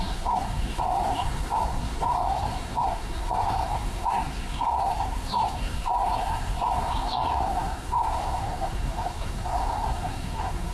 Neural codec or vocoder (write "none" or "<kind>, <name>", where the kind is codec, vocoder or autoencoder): codec, SNAC